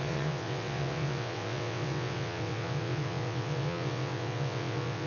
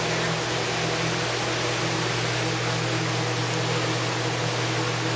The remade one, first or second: first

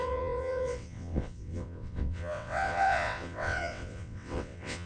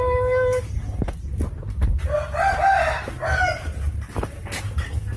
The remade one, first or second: first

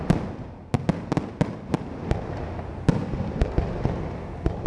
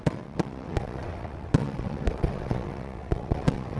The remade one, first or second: second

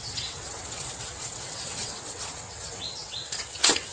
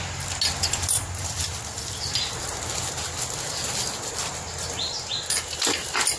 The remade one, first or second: first